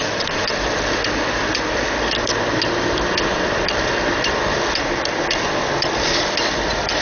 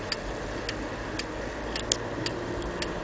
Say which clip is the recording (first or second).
second